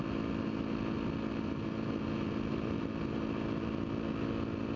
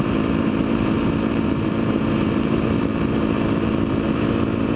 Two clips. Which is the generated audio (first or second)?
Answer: second